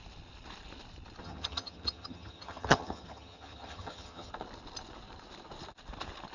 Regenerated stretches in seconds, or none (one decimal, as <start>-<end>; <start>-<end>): 1.2-4.3